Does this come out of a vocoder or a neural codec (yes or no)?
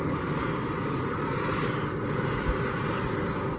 no